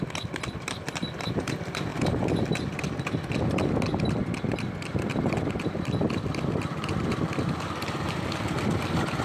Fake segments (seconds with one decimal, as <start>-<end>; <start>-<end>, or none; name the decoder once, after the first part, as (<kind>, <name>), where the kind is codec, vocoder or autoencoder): none